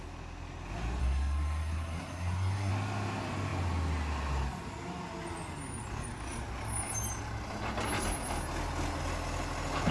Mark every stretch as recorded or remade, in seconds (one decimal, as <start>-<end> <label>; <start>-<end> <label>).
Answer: 0.0-1.0 recorded; 1.0-2.7 remade; 2.7-9.9 recorded